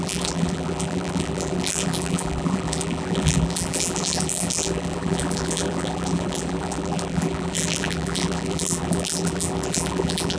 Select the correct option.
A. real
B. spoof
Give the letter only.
B